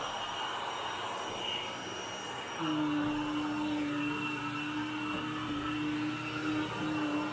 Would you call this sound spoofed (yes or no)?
no